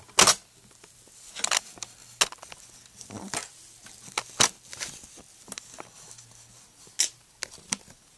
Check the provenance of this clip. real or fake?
real